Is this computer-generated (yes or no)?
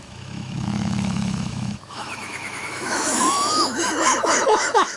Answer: yes